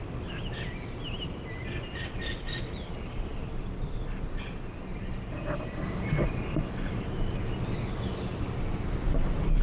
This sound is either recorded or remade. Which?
recorded